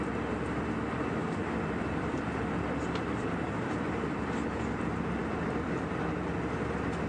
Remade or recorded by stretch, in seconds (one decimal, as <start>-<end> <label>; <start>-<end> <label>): 0.0-1.2 recorded; 1.2-4.8 remade; 4.8-5.2 recorded; 5.2-5.8 remade; 5.8-7.1 recorded